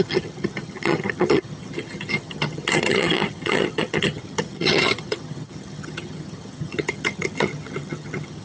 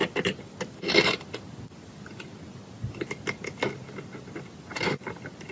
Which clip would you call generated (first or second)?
first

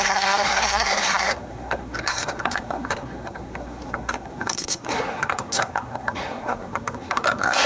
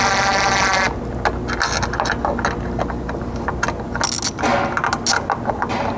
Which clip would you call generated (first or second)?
first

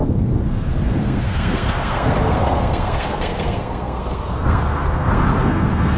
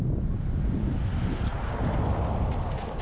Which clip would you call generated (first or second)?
first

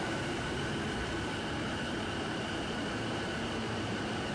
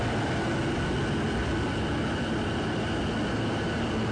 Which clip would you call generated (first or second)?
first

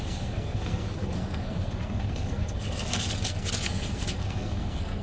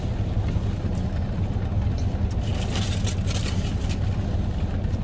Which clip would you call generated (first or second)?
first